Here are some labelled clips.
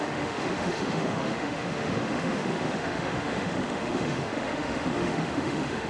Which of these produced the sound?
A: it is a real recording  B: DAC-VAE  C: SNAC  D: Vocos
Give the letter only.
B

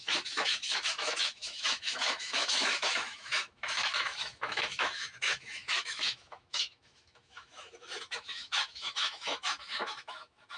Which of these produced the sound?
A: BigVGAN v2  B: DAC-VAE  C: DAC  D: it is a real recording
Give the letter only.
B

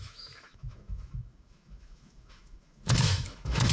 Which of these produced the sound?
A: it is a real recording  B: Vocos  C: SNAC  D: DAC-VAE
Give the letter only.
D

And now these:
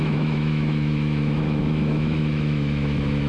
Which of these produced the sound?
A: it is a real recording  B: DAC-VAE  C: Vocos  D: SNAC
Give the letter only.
B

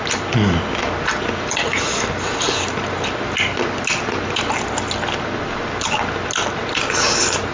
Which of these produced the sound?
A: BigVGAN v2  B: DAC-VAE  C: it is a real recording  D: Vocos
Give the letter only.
C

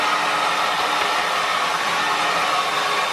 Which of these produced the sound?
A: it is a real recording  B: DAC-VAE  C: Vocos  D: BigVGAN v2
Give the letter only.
A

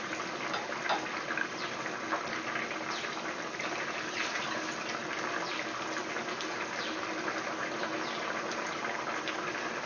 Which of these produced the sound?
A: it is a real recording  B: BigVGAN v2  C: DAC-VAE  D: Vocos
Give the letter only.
A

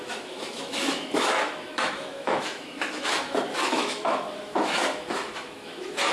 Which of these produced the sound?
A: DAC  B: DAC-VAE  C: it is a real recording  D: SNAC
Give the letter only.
B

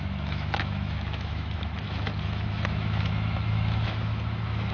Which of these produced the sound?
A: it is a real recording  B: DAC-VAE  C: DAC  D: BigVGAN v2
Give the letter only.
B